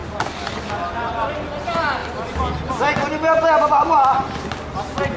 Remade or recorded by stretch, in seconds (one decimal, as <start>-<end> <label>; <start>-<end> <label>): 0.0-5.2 recorded